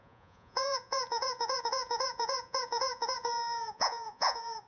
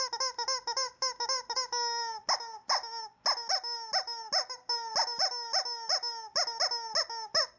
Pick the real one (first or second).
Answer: second